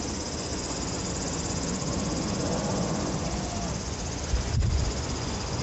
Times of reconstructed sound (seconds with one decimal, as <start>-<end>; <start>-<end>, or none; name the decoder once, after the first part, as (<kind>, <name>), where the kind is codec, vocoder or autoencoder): 0.0-5.6 (vocoder, Vocos)